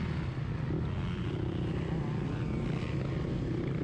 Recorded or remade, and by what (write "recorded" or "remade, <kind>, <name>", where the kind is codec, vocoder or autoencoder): recorded